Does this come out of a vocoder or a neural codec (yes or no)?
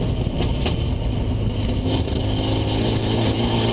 no